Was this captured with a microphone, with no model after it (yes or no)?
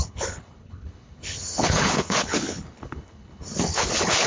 no